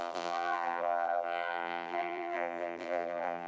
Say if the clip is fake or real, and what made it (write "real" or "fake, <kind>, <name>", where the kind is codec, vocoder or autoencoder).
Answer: fake, vocoder, BigVGAN v2